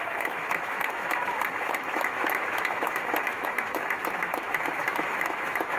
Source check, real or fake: fake